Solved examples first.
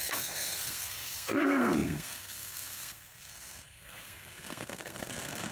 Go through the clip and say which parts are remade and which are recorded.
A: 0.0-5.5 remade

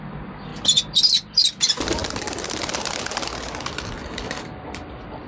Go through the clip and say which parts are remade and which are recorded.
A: 0.0-5.3 recorded

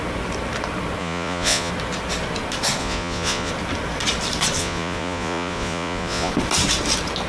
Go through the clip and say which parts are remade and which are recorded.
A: 0.0-1.0 recorded; 1.0-1.7 remade; 1.7-2.8 recorded; 2.8-3.5 remade; 3.5-4.6 recorded; 4.6-6.3 remade; 6.3-7.3 recorded

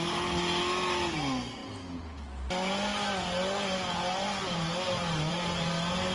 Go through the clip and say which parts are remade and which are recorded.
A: 0.0-6.1 recorded

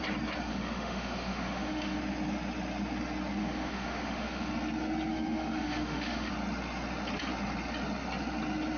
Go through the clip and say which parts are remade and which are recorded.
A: 0.0-0.5 recorded; 0.5-2.0 remade; 2.0-3.4 recorded; 3.4-4.5 remade; 4.5-5.1 recorded; 5.1-6.3 remade; 6.3-8.8 recorded

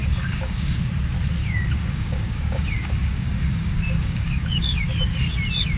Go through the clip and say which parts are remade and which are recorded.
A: 0.0-0.9 remade; 0.9-1.4 recorded; 1.4-4.9 remade; 4.9-5.8 recorded

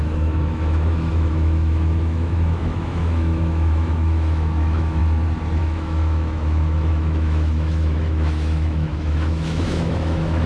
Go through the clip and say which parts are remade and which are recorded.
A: 0.0-5.0 remade; 5.0-5.6 recorded; 5.6-10.5 remade